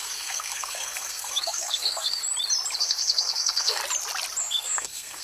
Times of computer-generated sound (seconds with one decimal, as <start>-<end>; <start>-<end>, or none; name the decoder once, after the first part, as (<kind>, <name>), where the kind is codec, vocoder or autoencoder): 0.0-2.2 (codec, SNAC); 2.8-3.8; 4.4-5.2